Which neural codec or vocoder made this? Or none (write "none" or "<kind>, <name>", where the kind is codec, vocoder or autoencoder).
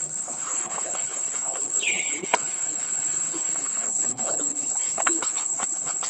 codec, HILCodec